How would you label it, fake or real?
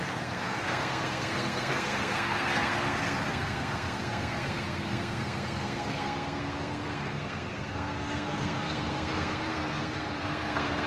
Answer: fake